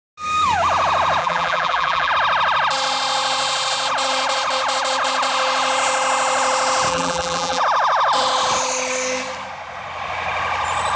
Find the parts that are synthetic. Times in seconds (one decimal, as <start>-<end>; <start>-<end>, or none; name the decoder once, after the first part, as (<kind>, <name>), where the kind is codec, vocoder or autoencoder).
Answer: 1.2-2.1 (vocoder, BigVGAN v2); 6.9-7.6